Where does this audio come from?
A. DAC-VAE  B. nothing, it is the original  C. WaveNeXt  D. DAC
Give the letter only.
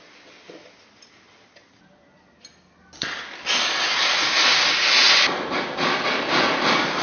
B